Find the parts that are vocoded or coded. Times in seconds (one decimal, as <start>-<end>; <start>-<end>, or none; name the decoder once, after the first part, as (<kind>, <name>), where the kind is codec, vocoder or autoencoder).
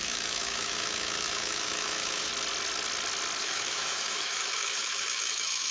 0.0-2.3 (autoencoder, DAC-VAE); 3.4-5.7